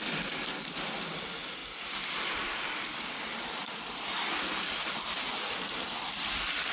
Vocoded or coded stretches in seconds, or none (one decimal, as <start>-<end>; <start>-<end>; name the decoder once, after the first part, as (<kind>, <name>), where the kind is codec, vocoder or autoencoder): none